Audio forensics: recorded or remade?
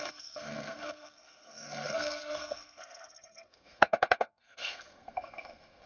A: remade